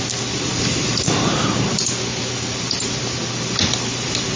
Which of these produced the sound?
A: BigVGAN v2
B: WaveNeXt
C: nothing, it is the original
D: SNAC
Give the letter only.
C